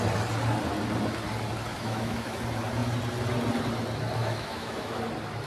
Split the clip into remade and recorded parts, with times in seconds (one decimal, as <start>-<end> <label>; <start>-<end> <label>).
0.0-1.7 recorded; 1.7-2.4 remade; 2.4-4.2 recorded; 4.2-5.0 remade; 5.0-5.5 recorded